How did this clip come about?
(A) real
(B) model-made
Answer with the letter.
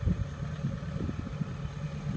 B